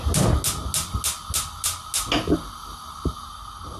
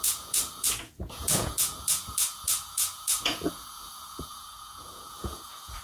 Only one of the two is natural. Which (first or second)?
first